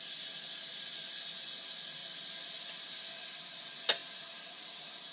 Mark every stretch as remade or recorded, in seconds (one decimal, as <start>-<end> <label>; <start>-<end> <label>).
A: 0.0-0.7 recorded; 0.7-1.3 remade; 1.3-2.0 recorded; 2.0-3.1 remade; 3.1-4.0 recorded; 4.0-4.6 remade; 4.6-5.1 recorded